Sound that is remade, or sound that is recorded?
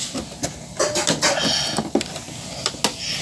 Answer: recorded